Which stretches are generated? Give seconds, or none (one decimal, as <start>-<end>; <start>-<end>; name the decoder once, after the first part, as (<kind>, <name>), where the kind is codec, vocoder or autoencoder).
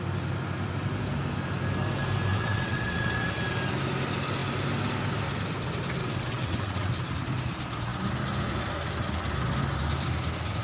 2.3-3.3 (vocoder, WaveNeXt); 6.0-6.9